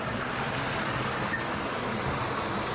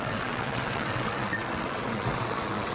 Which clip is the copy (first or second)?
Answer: second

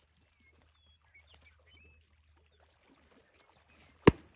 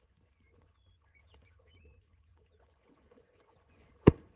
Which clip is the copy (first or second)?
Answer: second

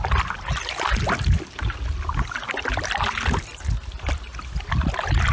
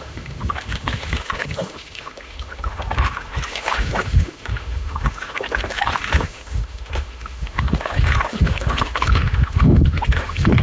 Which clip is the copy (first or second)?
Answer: second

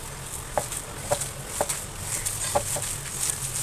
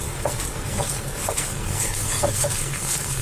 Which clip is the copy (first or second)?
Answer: second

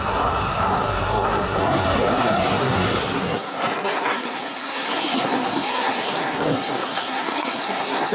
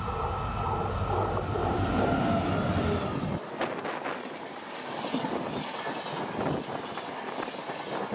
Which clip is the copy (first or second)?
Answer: first